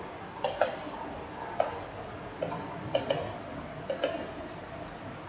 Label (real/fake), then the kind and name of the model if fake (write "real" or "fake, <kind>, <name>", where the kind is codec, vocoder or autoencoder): real